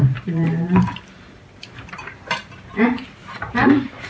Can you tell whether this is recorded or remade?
remade